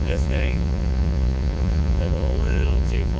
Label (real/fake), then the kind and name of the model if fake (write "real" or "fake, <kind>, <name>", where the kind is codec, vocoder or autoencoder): fake, vocoder, Vocos